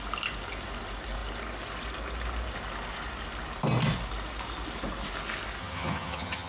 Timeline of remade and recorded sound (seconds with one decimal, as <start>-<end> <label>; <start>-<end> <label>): 0.0-5.6 recorded; 5.6-6.5 remade